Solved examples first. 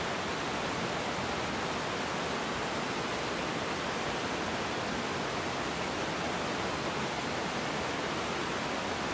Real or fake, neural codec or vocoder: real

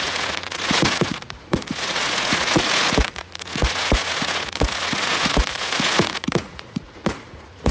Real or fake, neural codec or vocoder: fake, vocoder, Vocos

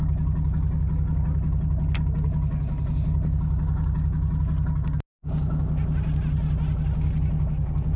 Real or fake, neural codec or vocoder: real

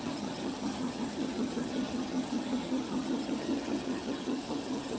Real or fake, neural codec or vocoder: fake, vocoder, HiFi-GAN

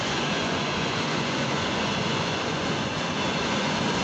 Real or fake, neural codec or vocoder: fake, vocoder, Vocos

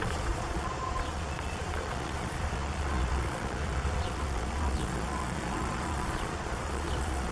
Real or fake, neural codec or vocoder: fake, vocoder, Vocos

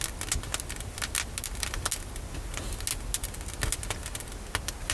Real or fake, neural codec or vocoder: real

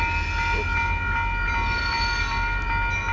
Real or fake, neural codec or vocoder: real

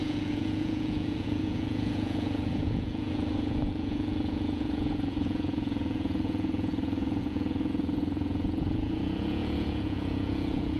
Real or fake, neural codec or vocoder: fake, vocoder, Vocos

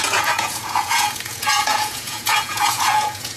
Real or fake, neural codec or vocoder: fake, vocoder, Vocos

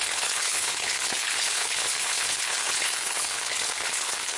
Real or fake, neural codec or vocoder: fake, codec, HILCodec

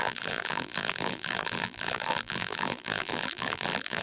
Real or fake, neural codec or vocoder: fake, vocoder, BigVGAN v2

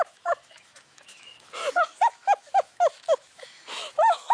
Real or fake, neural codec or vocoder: fake, autoencoder, DAC-VAE